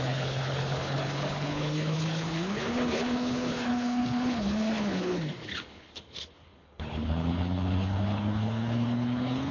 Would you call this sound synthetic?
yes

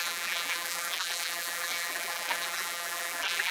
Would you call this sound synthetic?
yes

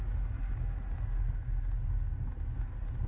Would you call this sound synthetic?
no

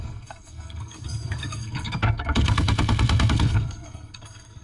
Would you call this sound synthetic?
yes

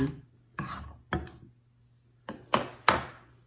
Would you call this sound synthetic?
no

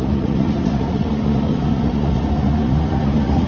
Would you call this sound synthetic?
yes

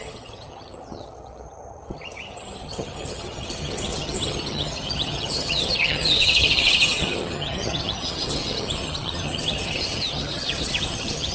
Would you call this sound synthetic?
yes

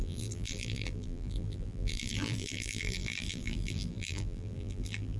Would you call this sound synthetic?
yes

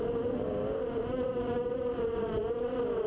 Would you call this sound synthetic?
no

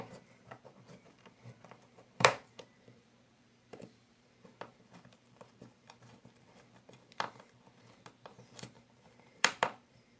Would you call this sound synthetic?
yes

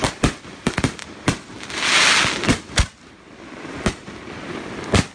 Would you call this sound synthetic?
no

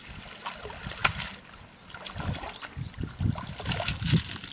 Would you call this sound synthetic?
no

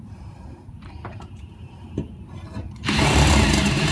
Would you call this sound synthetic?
yes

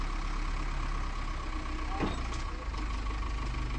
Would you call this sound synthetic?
no